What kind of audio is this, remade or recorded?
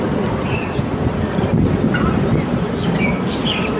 recorded